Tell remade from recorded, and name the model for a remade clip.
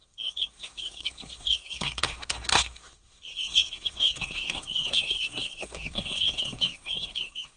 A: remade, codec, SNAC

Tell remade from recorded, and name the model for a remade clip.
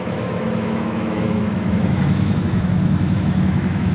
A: remade, autoencoder, DAC-VAE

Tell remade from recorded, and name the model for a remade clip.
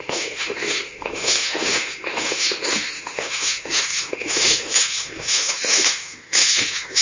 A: remade, autoencoder, DAC-VAE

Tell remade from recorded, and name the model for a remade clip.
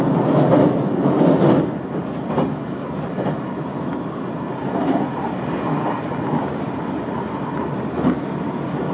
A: recorded